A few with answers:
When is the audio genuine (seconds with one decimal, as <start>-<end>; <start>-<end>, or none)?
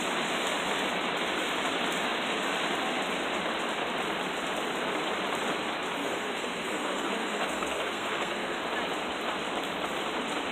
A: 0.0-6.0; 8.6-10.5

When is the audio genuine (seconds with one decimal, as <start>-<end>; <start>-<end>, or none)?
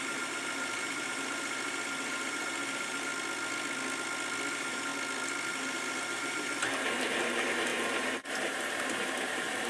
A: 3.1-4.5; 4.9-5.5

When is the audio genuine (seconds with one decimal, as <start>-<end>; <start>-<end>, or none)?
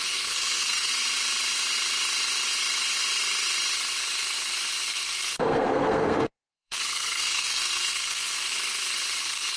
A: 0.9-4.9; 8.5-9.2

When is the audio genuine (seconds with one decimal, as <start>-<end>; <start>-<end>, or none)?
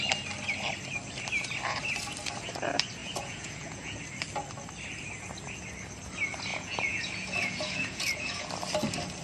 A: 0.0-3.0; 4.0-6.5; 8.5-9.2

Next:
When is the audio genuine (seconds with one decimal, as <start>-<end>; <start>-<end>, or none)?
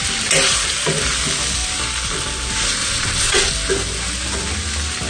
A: 0.0-2.8; 3.5-5.1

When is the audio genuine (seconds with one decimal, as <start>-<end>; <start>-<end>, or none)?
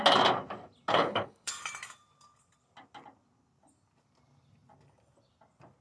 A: 0.0-0.9; 1.5-5.8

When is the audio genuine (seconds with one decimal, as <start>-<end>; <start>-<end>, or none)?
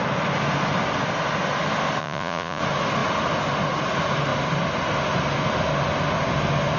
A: 0.0-2.0; 2.6-6.8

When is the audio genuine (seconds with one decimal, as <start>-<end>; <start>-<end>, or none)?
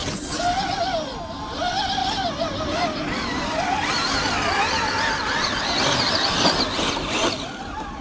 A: 0.0-8.0